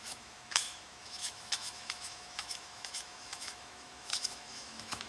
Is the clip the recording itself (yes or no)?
no